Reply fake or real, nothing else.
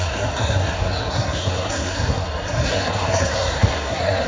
fake